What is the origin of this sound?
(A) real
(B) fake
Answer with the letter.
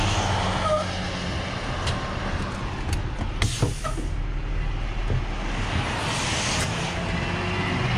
A